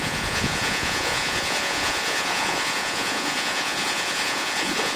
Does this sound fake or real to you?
fake